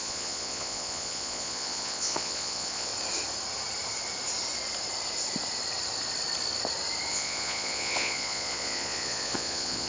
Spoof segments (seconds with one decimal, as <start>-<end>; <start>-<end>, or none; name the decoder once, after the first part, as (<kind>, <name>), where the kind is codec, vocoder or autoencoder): 0.0-2.9 (vocoder, Vocos); 7.1-9.9